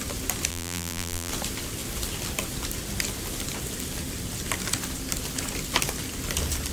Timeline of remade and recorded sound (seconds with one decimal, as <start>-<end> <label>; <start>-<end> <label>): 0.0-0.5 recorded; 0.5-1.3 remade; 1.3-6.7 recorded